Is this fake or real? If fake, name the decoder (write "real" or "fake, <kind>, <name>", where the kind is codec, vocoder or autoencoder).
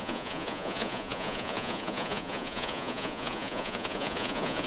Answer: fake, vocoder, Vocos